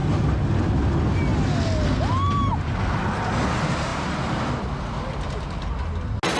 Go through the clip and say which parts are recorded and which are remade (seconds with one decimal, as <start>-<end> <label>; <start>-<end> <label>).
0.0-0.8 remade; 0.8-3.9 recorded; 3.9-4.6 remade; 4.6-6.4 recorded